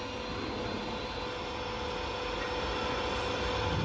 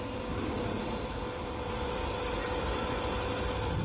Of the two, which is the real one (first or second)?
first